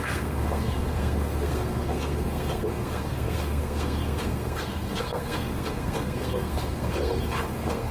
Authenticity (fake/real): fake